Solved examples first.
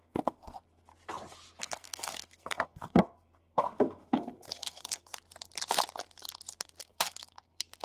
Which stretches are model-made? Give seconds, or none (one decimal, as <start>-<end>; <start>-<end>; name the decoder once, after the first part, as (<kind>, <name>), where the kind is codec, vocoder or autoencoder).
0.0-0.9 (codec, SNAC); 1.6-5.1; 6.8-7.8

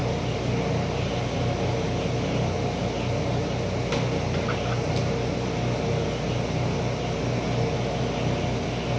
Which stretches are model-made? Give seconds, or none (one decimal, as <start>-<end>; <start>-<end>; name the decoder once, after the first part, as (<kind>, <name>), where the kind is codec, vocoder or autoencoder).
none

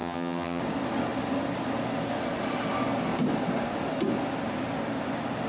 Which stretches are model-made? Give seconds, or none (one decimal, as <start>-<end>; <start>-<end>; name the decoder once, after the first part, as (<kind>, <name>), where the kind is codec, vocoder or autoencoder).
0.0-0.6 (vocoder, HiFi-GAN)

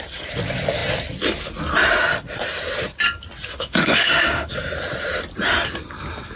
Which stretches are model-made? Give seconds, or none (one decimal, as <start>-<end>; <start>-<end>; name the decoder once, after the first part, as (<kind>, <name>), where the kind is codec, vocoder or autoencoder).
3.5-4.5 (autoencoder, DAC-VAE)

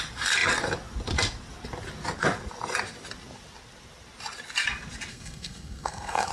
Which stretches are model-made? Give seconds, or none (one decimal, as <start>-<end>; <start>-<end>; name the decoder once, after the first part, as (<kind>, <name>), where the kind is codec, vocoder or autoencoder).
5.1-6.3 (codec, SNAC)